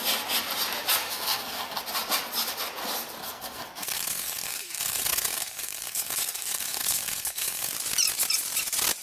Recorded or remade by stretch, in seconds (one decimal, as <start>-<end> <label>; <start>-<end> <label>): 0.0-1.0 recorded; 1.0-1.8 remade; 1.8-3.2 recorded; 3.2-7.7 remade; 7.7-9.0 recorded